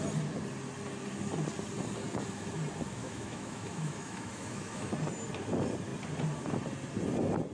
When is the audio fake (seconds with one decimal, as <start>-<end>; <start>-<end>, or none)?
3.0-4.9